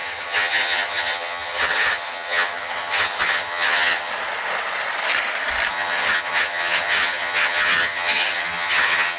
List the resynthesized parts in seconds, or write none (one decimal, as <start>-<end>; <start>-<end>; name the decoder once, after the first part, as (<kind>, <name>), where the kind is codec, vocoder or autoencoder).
0.0-4.1 (vocoder, HiFi-GAN); 5.7-9.2

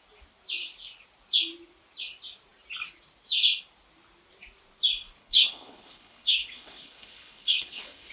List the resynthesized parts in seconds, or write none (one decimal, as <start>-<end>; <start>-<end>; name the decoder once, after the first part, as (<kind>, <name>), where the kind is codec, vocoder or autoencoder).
5.2-8.1 (codec, HILCodec)

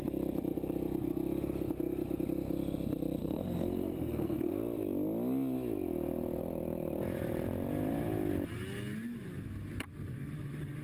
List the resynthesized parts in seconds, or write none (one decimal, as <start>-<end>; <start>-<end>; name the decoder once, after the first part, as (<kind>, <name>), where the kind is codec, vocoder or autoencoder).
3.2-4.5 (codec, SNAC)

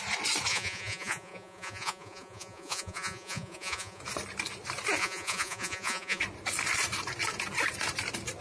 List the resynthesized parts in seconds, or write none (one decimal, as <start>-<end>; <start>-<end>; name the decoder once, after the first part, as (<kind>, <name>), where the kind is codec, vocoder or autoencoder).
0.5-4.0 (vocoder, Vocos); 5.0-6.2

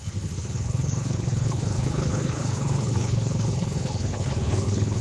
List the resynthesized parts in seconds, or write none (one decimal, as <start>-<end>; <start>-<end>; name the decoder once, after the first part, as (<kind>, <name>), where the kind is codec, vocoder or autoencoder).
0.0-5.0 (codec, HILCodec)

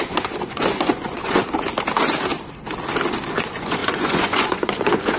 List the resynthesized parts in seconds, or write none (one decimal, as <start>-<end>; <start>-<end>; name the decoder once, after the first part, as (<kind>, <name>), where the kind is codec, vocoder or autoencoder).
0.0-1.4 (vocoder, Vocos); 3.3-5.2

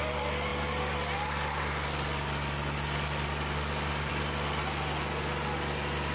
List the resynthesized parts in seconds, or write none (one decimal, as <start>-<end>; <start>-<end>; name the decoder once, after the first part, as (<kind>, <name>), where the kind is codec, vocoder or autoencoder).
0.5-4.1 (vocoder, BigVGAN v2)